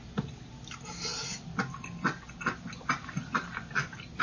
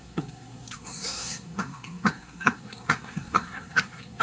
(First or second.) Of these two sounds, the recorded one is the first